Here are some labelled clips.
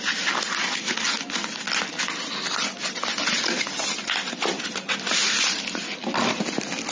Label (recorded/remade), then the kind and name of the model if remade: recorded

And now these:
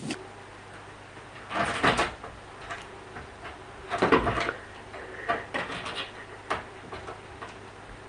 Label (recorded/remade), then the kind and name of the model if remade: recorded